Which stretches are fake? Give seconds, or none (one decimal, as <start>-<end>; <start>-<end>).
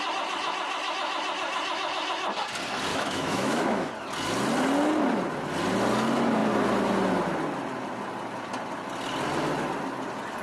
2.9-3.9